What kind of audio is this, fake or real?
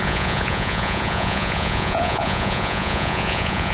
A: fake